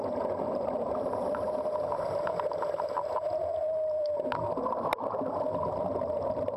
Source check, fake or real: real